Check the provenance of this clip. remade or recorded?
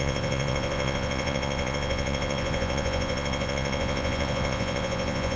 remade